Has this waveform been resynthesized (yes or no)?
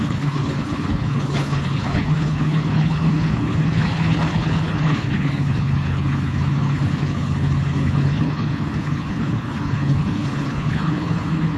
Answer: yes